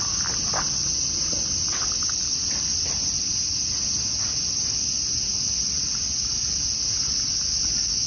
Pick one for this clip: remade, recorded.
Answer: recorded